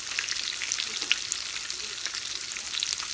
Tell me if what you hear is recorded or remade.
recorded